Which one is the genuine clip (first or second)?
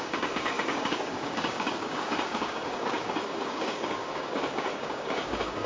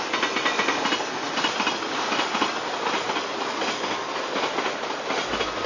second